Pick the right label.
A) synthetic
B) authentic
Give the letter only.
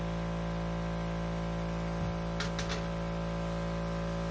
B